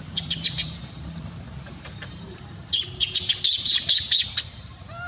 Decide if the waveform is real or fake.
fake